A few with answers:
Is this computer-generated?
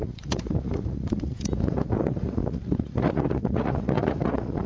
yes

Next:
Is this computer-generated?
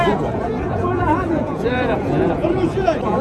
yes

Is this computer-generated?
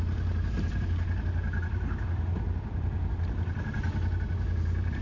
no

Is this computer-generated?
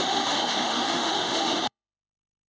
yes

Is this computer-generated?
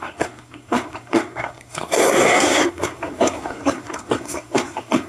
yes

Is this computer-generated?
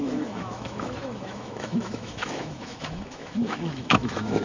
yes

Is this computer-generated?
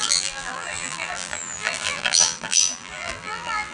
yes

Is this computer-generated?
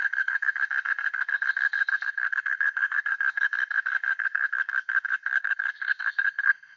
yes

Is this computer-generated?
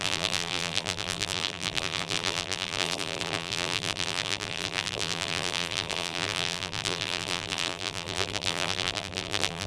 yes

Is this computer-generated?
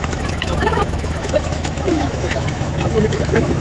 yes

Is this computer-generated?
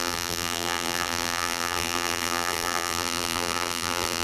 yes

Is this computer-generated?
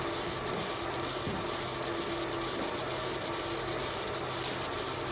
no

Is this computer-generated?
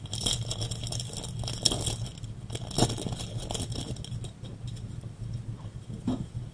no